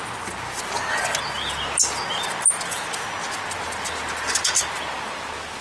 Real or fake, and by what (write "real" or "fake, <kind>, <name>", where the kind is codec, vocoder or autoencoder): real